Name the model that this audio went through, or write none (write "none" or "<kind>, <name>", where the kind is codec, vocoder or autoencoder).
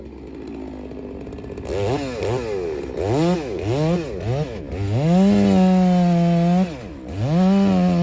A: none